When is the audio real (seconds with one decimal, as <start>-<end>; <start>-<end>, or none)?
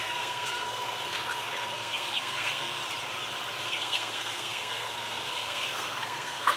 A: 2.8-3.6